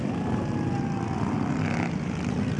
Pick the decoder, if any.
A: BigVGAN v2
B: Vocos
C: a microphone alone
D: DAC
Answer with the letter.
C